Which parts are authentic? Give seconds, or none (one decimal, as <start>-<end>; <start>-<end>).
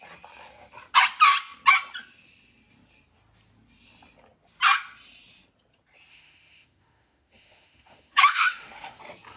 0.0-6.1; 9.0-9.4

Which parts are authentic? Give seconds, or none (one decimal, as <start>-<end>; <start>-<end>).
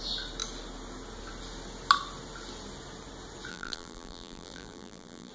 0.0-3.5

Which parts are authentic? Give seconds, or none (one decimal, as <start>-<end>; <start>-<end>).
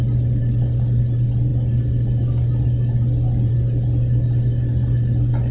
0.0-5.5